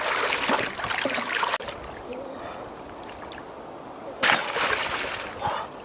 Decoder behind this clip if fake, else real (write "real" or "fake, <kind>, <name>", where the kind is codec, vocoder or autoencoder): real